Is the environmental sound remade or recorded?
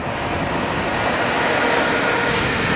recorded